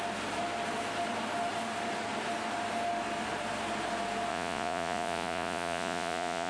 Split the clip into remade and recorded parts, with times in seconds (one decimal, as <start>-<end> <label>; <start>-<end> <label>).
0.0-4.3 recorded; 4.3-6.5 remade